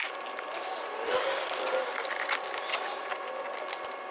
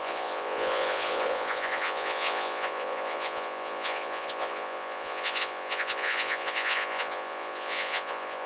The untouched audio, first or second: first